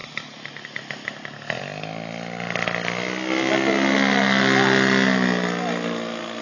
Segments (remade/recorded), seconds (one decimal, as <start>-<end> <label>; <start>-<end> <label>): 0.0-6.4 recorded